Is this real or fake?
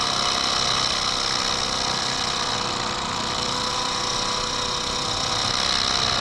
real